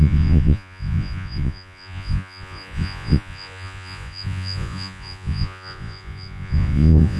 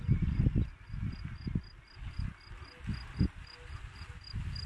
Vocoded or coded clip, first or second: first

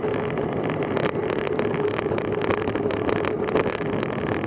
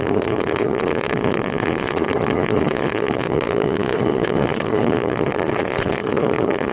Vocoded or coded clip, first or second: second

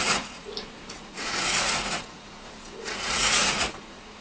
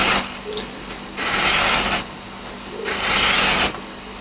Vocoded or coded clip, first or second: first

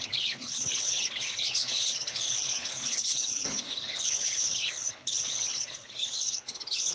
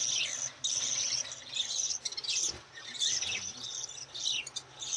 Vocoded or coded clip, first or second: first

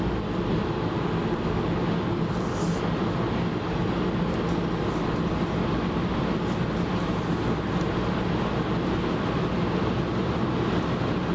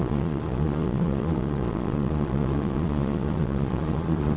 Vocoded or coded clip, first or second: second